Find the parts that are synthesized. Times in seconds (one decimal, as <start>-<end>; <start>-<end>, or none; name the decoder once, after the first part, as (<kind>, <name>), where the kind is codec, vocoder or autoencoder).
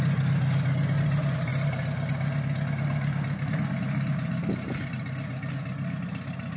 none